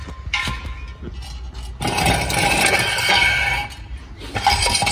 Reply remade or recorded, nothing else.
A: recorded